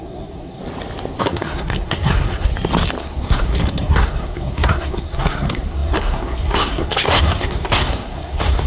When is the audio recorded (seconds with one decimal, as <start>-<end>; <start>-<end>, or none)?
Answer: 0.6-1.2; 2.5-3.0